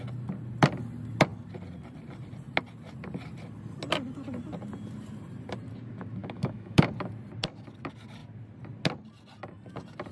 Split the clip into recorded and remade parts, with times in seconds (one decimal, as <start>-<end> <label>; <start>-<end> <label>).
0.0-6.2 recorded; 6.2-6.9 remade; 6.9-10.1 recorded